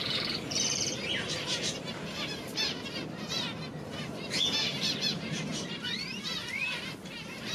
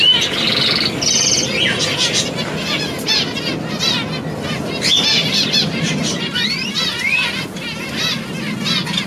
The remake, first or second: first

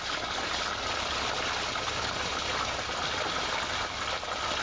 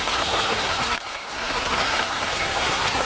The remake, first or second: second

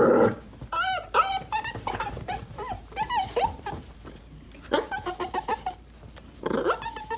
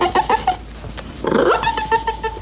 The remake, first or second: first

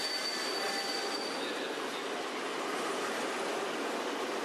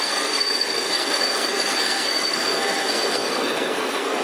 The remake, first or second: second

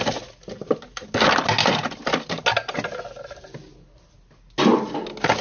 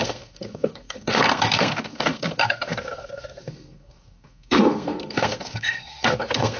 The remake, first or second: second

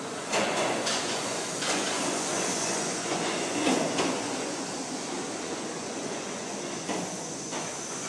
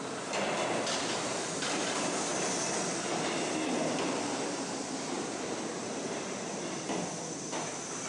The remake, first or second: first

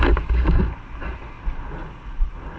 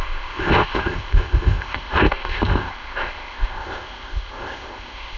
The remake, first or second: second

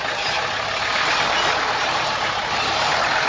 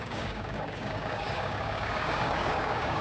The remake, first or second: second